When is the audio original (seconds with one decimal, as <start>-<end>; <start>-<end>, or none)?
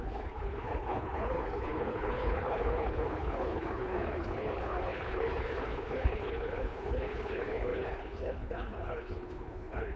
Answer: none